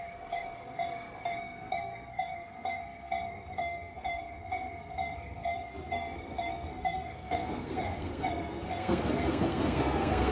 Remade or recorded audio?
remade